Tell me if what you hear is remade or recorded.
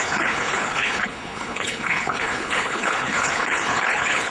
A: remade